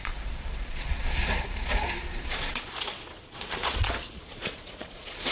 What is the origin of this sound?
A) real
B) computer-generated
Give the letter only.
B